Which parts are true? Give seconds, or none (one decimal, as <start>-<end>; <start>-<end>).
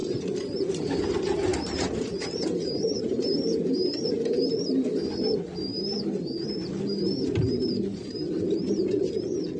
0.7-1.5; 3.2-5.7; 8.9-9.6